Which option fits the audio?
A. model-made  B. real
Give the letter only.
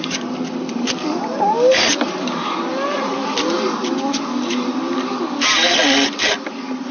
B